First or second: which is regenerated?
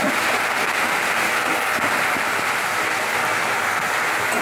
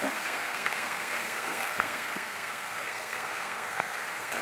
second